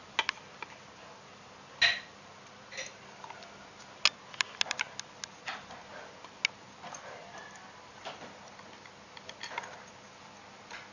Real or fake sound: real